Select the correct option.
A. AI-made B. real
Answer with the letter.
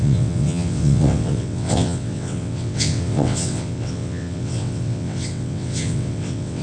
A